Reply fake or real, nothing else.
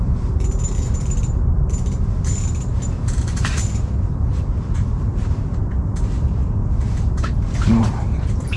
fake